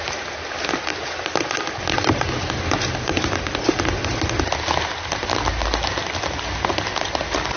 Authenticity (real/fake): real